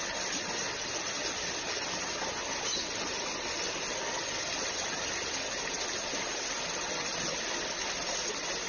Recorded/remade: recorded